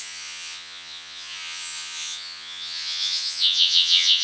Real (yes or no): no